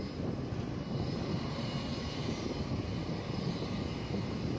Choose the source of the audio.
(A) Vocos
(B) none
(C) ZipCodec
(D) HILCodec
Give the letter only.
B